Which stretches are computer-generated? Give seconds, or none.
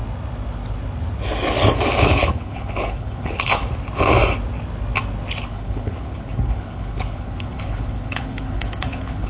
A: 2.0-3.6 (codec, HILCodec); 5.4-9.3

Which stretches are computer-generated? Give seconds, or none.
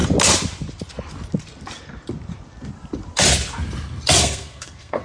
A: 4.2-5.0 (codec, SNAC)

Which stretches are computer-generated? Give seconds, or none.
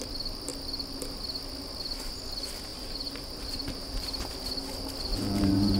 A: 2.7-4.3 (vocoder, BigVGAN v2); 5.1-5.8